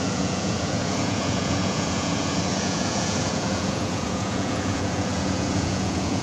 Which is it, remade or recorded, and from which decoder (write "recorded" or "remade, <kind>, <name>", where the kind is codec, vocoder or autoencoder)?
remade, vocoder, Vocos